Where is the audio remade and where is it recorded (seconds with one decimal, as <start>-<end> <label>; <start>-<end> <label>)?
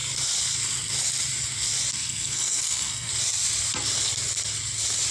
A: 0.0-1.9 recorded; 1.9-3.1 remade; 3.1-5.1 recorded